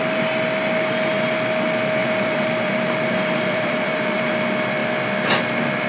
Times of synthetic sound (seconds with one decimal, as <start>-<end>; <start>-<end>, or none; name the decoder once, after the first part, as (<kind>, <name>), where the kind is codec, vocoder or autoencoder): 2.0-4.3 (vocoder, BigVGAN v2)